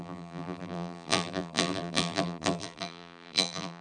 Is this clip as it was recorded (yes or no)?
no